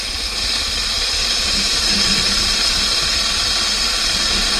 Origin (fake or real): real